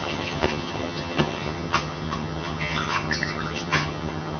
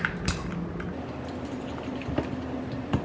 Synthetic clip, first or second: first